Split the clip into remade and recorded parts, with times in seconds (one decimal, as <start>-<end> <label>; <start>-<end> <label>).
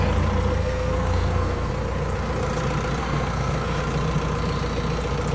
0.0-0.6 recorded; 0.6-1.7 remade; 1.7-3.0 recorded; 3.0-3.8 remade; 3.8-5.3 recorded